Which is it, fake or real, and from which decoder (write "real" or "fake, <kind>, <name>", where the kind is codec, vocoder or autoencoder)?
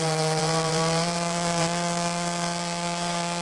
fake, vocoder, BigVGAN v2